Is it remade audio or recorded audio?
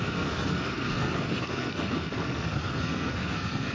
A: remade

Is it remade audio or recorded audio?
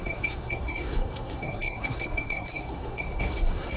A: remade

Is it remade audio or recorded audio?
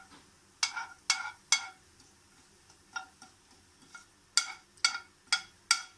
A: recorded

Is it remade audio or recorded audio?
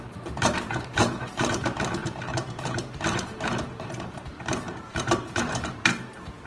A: remade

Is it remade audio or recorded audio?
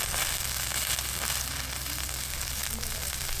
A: recorded